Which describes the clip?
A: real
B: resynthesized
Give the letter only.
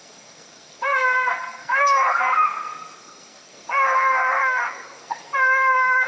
B